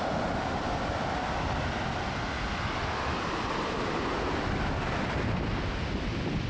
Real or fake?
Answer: real